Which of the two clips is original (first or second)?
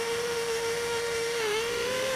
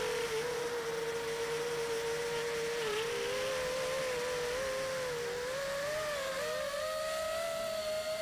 second